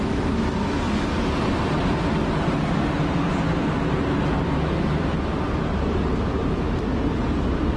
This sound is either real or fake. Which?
fake